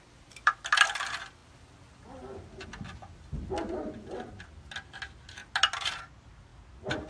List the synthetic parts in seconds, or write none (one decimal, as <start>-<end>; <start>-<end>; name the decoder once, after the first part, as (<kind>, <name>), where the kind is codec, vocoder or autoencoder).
none